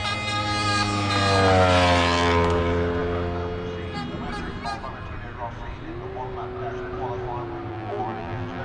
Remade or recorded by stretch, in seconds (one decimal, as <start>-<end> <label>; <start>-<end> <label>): 0.0-7.7 recorded; 7.7-8.6 remade